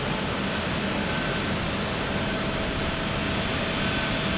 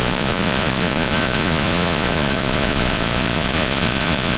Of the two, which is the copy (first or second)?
second